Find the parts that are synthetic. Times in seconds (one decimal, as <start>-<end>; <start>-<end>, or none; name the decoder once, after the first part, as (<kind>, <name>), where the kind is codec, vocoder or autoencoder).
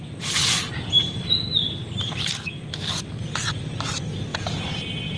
4.3-5.2 (vocoder, Vocos)